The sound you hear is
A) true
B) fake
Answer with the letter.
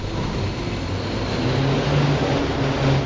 A